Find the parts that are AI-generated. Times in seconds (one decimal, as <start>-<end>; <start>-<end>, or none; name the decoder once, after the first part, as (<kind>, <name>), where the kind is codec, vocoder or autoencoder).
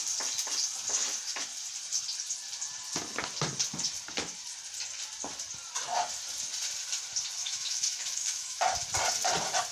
7.4-8.6 (autoencoder, DAC-VAE)